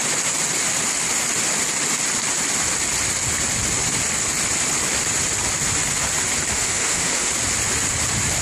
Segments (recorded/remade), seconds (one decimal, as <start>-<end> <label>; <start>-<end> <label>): 0.0-6.5 recorded; 6.5-7.3 remade; 7.3-8.4 recorded